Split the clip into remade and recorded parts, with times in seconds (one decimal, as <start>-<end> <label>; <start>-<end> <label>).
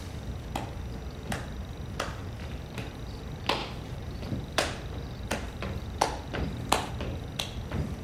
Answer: 0.0-2.2 recorded; 2.2-3.0 remade; 3.0-3.6 recorded; 3.6-6.9 remade; 6.9-8.0 recorded